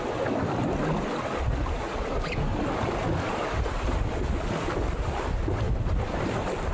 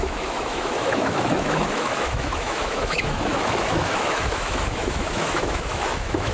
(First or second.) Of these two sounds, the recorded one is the first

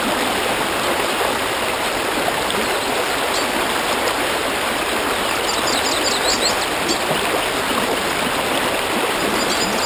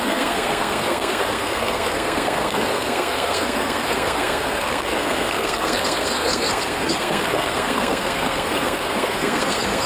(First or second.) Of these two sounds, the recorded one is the first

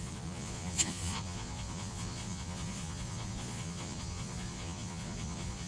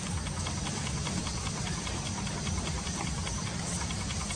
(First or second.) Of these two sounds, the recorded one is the second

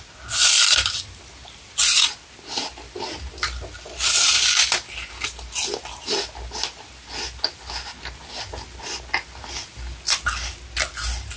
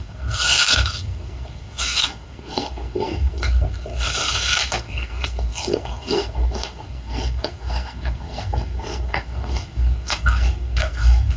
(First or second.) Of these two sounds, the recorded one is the first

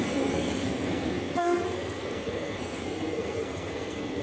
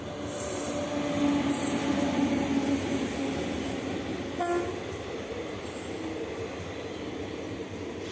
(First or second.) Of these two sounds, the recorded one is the second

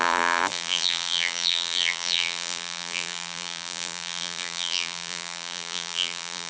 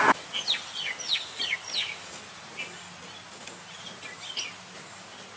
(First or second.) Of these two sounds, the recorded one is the second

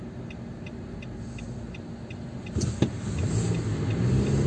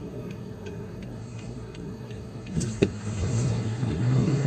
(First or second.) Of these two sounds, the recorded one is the first